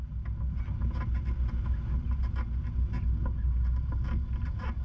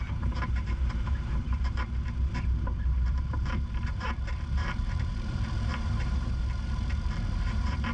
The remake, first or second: second